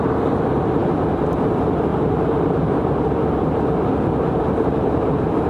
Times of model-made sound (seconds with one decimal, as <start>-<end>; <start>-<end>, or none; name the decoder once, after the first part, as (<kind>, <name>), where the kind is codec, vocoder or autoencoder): 1.9-5.5 (vocoder, BigVGAN v2)